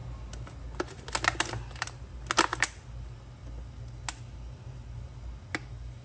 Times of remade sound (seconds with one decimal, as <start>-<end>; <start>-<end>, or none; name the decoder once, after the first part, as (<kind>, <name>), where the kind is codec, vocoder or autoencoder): none